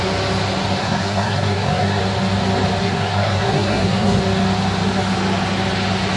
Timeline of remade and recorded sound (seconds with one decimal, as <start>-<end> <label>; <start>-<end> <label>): 0.0-0.8 recorded; 0.8-2.0 remade; 2.0-2.8 recorded; 2.8-4.2 remade; 4.2-6.2 recorded